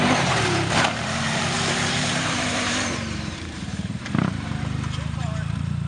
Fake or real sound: fake